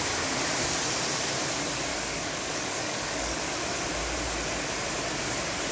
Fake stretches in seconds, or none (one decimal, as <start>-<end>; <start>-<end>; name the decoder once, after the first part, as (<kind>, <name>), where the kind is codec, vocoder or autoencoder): 1.9-3.4 (codec, DAC)